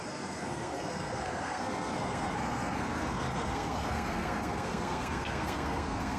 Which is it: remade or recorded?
remade